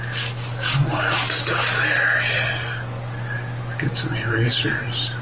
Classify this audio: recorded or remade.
recorded